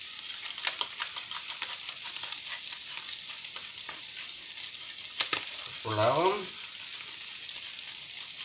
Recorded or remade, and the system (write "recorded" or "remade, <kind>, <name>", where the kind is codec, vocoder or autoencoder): recorded